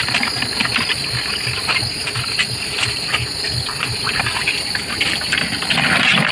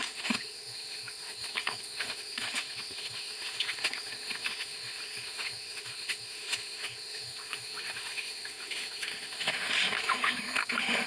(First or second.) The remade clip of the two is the second